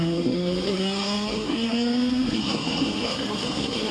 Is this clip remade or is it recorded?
remade